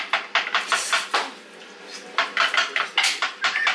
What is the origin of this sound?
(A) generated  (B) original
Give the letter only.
B